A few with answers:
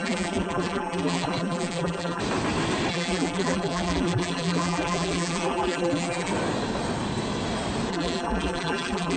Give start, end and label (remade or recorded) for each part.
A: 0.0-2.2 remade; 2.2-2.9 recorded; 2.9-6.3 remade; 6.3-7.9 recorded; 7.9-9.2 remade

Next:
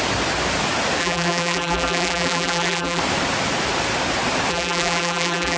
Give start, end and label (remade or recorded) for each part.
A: 0.0-1.0 recorded; 1.0-3.0 remade; 3.0-4.5 recorded; 4.5-5.6 remade